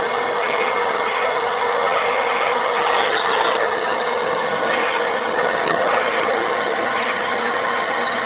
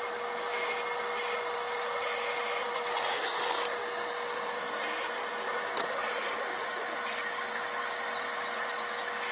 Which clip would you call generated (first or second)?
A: first